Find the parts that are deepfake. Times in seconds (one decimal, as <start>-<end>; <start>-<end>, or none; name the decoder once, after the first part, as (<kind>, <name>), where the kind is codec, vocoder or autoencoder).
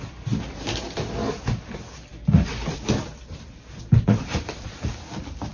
none